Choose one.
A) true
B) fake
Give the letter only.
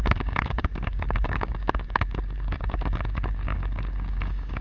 B